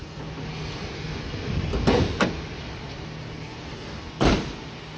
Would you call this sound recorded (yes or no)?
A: yes